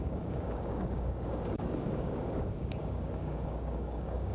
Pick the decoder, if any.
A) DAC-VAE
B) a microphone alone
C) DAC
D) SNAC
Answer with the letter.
C